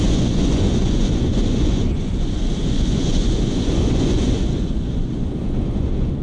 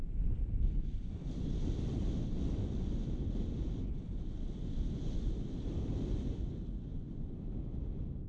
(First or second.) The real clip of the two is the second